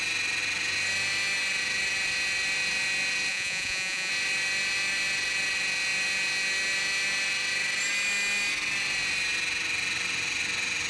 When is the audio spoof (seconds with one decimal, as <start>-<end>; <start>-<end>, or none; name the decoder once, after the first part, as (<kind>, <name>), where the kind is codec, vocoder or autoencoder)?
3.3-4.1 (vocoder, Vocos)